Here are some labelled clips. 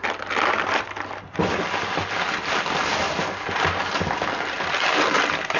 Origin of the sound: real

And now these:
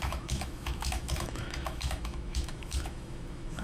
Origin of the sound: fake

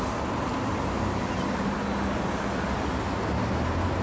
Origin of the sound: real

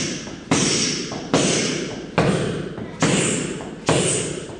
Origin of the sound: real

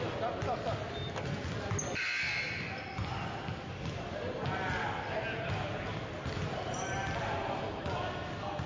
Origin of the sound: real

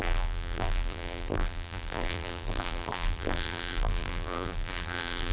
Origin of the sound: fake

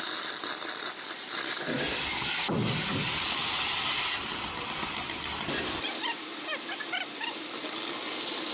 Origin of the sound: real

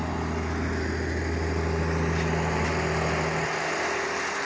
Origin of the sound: real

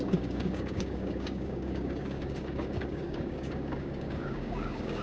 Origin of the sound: fake